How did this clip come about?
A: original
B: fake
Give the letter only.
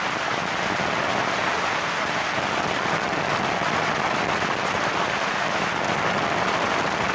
A